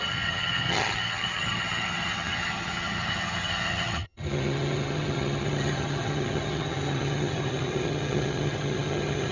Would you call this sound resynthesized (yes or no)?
yes